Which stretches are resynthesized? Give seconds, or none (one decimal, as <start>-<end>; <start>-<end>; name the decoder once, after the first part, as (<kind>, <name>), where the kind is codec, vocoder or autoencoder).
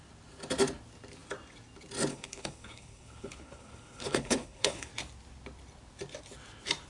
2.1-4.9 (codec, HILCodec)